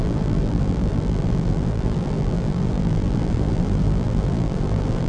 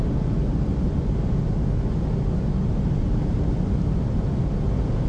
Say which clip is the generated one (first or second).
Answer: first